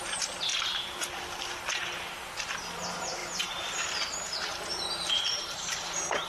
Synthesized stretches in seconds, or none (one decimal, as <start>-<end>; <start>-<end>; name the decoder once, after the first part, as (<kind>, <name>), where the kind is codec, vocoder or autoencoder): 0.0-0.5 (vocoder, BigVGAN v2); 2.5-3.2; 5.1-6.3

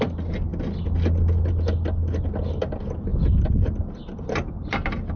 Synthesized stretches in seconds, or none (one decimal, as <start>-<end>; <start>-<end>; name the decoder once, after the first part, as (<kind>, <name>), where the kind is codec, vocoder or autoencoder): 3.1-5.2 (vocoder, BigVGAN v2)

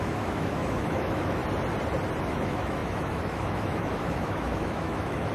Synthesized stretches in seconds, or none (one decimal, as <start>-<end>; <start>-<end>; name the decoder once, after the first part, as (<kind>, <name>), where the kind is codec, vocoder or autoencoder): 0.0-1.4 (autoencoder, DAC-VAE); 2.2-5.3

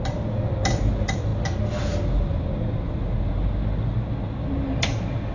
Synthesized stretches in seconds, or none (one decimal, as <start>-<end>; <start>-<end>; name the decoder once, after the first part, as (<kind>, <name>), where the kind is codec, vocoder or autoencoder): none

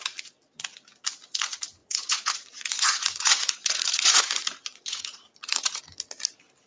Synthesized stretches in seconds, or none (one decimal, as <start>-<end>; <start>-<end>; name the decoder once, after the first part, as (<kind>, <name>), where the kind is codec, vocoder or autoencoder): 1.8-5.8 (vocoder, Vocos)

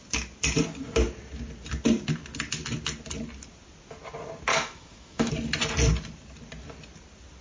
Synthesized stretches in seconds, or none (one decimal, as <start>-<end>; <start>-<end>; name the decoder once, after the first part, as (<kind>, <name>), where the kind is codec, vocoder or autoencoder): 4.5-5.3 (autoencoder, DAC-VAE)

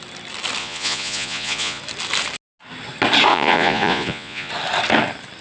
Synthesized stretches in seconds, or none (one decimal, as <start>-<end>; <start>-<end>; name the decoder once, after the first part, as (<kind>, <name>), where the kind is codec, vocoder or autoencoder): 0.6-1.8 (vocoder, Vocos); 3.3-4.5